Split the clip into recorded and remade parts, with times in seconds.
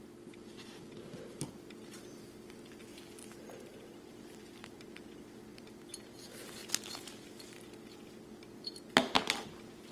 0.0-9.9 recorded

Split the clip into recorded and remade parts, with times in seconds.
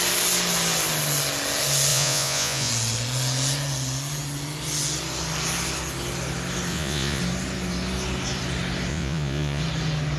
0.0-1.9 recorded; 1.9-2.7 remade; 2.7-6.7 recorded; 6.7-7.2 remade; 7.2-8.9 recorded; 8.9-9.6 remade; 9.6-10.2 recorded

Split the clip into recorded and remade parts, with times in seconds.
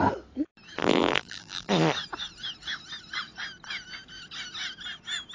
0.0-0.8 recorded; 0.8-1.7 remade; 1.7-5.3 recorded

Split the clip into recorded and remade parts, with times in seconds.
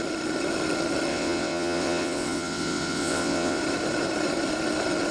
0.0-1.1 recorded; 1.1-3.6 remade; 3.6-5.1 recorded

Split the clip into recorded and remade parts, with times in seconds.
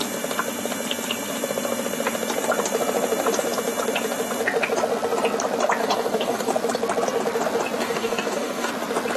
0.0-5.8 recorded; 5.8-6.5 remade; 6.5-7.8 recorded; 7.8-8.7 remade; 8.7-9.2 recorded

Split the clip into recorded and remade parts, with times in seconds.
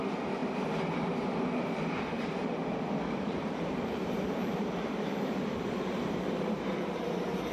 0.0-0.4 remade; 0.4-1.4 recorded; 1.4-2.5 remade; 2.5-3.2 recorded; 3.2-7.5 remade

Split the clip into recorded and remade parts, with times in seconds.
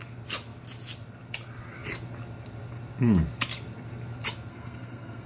0.0-4.5 recorded; 4.5-5.3 remade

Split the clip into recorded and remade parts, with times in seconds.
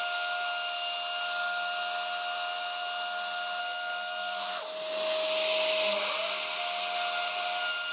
0.0-3.6 recorded; 3.6-4.5 remade; 4.5-7.9 recorded